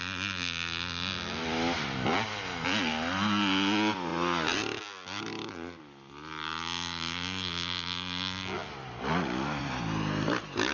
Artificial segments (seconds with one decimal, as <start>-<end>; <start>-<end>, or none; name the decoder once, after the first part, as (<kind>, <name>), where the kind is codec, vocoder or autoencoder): none